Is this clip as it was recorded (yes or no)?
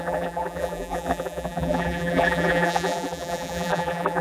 no